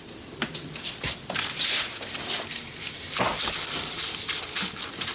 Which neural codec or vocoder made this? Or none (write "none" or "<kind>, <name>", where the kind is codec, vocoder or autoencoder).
vocoder, BigVGAN v2